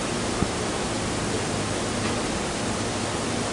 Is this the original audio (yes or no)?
yes